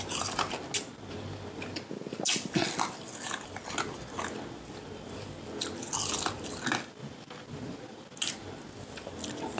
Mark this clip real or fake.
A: real